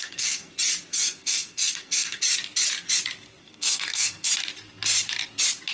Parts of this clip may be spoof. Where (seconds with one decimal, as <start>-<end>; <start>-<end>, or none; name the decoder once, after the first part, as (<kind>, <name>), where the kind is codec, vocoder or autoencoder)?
0.0-0.5 (codec, SNAC); 0.9-2.2; 3.4-4.3